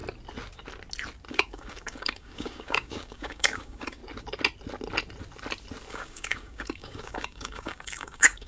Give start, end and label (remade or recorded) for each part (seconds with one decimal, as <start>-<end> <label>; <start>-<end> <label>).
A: 0.0-1.3 recorded; 1.3-4.0 remade; 4.0-5.9 recorded; 5.9-8.5 remade